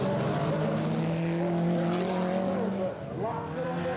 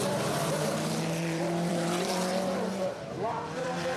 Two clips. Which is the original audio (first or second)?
first